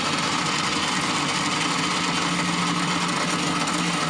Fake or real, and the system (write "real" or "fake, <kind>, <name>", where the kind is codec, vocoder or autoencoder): real